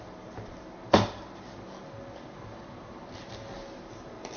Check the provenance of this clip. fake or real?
real